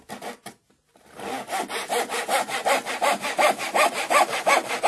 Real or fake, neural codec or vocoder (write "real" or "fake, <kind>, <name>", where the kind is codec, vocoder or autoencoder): real